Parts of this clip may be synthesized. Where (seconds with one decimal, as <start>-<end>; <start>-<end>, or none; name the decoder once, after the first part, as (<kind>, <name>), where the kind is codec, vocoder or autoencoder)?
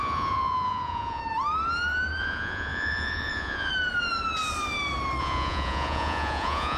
0.0-1.2 (vocoder, Vocos); 2.2-3.7; 5.2-6.8